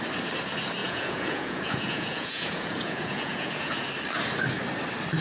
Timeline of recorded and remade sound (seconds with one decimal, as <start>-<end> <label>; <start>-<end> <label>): 0.0-0.8 recorded; 0.8-3.9 remade; 3.9-5.2 recorded